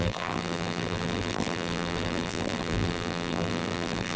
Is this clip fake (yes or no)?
yes